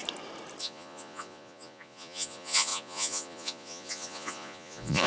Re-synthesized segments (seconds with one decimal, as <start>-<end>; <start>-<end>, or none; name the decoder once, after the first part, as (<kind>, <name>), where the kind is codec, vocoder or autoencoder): 0.6-5.1 (vocoder, Vocos)